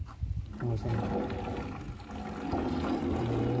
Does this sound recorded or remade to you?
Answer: recorded